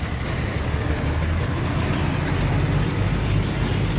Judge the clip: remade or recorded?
recorded